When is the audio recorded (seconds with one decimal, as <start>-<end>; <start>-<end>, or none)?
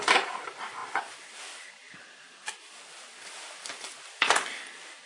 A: none